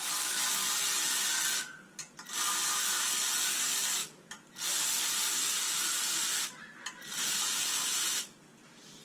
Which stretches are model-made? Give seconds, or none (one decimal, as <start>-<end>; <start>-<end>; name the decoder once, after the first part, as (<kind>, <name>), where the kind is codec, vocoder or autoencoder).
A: none